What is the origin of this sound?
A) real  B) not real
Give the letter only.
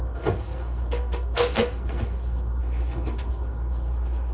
B